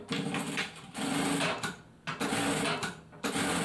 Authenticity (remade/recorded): recorded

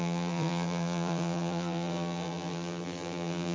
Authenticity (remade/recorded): remade